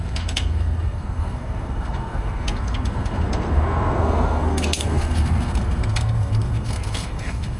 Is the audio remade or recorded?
remade